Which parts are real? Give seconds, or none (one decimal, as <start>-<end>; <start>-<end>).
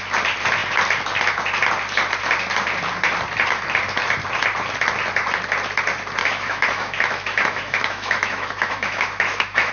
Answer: 0.0-6.2